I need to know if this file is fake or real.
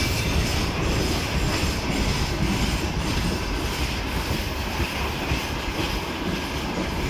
real